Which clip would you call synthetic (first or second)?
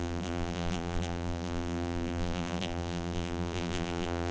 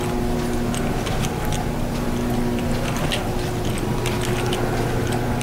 first